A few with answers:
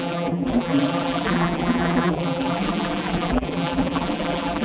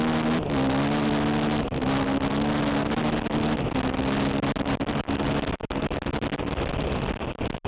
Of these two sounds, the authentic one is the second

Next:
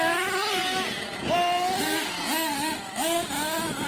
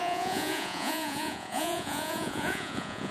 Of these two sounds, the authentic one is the first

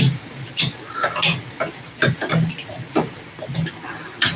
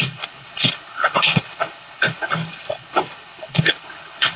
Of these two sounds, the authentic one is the first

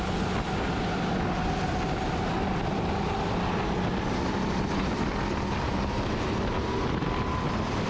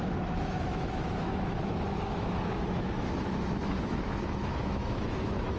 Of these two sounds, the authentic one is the first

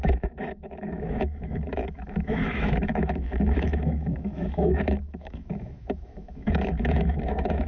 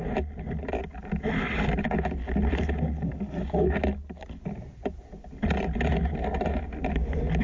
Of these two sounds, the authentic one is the second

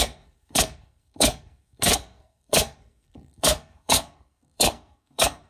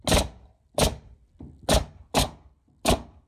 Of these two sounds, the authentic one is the second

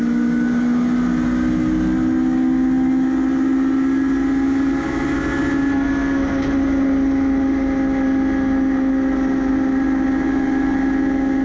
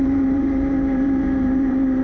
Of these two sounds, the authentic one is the first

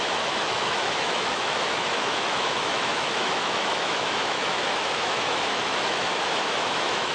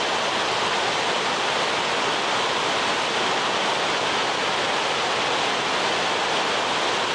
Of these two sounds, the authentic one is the second